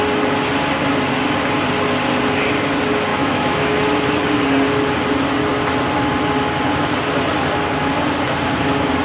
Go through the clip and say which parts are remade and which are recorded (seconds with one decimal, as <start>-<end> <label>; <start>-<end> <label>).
0.0-3.1 recorded; 3.1-3.8 remade; 3.8-9.0 recorded